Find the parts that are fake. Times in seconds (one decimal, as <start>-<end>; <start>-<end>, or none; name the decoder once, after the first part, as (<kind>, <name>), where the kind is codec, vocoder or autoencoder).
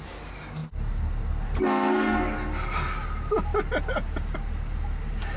none